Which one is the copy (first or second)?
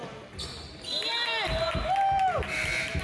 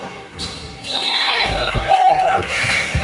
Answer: second